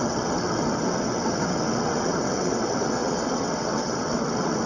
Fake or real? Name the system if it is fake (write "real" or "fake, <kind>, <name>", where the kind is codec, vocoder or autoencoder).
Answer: fake, vocoder, WaveNeXt